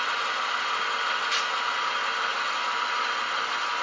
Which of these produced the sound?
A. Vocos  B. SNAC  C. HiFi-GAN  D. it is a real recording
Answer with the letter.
D